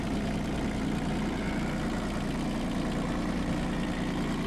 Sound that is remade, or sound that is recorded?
recorded